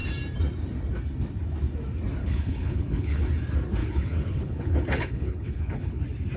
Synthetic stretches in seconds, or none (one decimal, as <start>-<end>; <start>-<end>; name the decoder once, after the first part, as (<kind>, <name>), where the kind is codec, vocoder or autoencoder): 2.2-3.2 (codec, HILCodec); 3.8-6.0